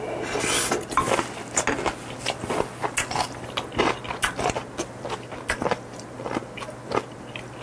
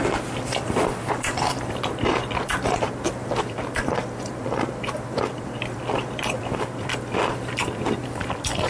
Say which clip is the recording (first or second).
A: first